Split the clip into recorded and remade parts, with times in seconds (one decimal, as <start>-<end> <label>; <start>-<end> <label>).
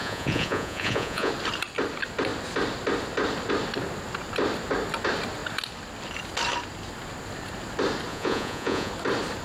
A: 0.0-1.3 remade; 1.3-8.1 recorded; 8.1-8.9 remade; 8.9-9.4 recorded